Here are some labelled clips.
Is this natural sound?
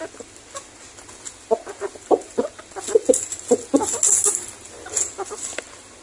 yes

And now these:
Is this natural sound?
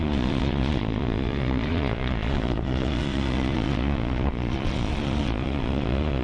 no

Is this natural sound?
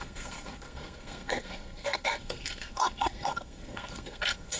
no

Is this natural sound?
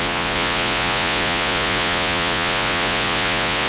no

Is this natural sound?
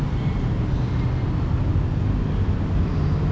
yes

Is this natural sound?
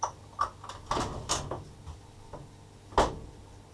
yes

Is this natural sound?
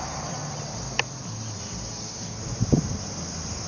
yes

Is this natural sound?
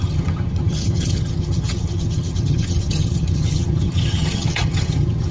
no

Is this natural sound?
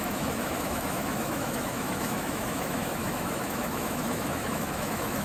no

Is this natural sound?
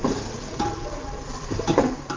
no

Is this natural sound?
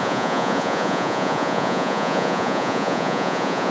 no